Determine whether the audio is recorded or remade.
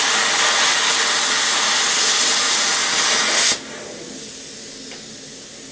recorded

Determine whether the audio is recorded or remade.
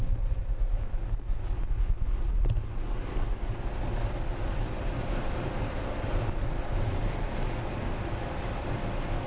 recorded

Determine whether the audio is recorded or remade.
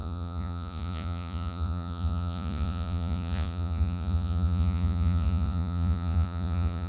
remade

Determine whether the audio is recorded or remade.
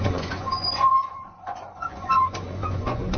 remade